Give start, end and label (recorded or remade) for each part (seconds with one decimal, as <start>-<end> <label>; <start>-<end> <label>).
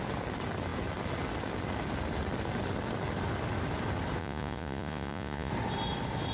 0.0-4.2 recorded; 4.2-5.5 remade; 5.5-6.3 recorded